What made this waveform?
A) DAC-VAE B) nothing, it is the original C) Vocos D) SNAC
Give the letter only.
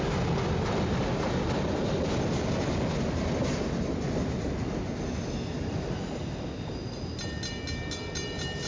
B